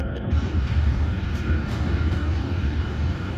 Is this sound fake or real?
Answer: fake